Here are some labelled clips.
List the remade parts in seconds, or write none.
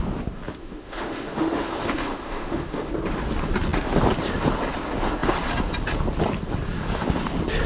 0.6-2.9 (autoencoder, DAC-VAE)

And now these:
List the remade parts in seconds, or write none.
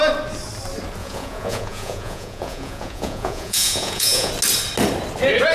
1.0-4.3 (vocoder, Vocos)